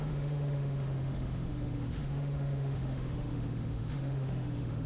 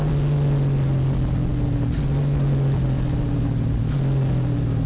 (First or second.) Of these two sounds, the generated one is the first